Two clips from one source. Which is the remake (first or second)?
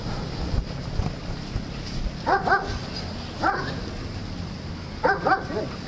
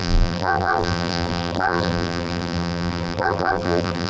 second